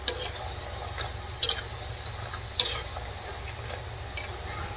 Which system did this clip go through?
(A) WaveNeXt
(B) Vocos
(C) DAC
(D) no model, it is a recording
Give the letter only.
D